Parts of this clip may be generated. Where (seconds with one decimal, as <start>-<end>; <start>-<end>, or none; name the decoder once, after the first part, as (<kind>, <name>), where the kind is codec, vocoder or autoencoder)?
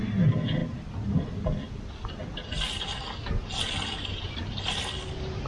none